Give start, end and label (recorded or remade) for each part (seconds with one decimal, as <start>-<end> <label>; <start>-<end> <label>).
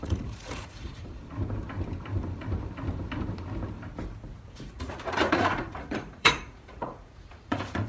0.0-1.2 remade; 1.2-4.5 recorded; 4.5-7.9 remade